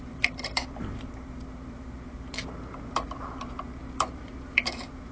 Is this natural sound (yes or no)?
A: no